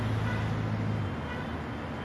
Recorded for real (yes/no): yes